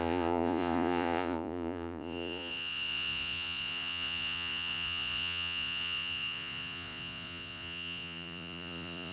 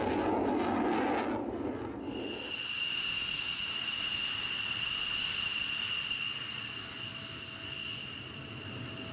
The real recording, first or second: second